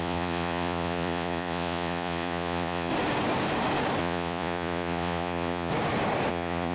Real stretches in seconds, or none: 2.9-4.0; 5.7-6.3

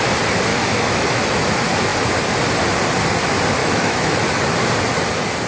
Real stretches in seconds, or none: 0.0-0.5; 1.5-3.6; 4.4-5.5

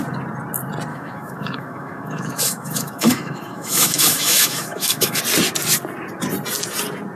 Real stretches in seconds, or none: 0.0-0.9; 5.2-7.2

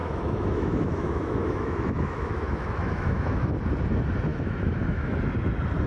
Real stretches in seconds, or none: 3.5-4.3; 5.2-5.9